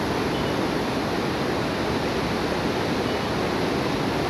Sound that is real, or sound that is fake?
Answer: real